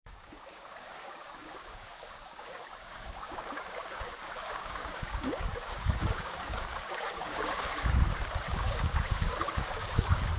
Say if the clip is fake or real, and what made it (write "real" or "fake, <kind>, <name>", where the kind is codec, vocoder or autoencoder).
fake, codec, DAC